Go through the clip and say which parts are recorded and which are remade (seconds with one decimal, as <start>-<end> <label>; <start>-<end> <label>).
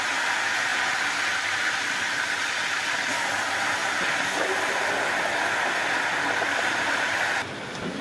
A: 0.0-8.0 recorded